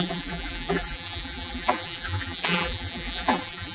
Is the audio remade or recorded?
remade